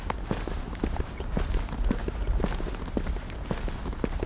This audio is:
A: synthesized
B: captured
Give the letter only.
B